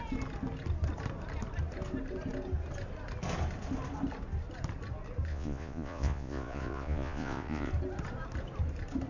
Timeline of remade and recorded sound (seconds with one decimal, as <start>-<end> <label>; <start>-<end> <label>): 0.0-5.3 recorded; 5.3-7.7 remade; 7.7-9.1 recorded